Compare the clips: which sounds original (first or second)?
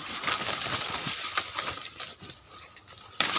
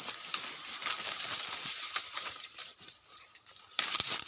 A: first